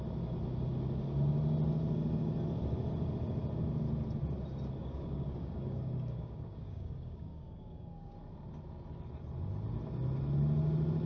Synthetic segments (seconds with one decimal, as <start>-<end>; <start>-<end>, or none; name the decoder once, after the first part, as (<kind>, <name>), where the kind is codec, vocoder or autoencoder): 4.8-8.1 (codec, DAC)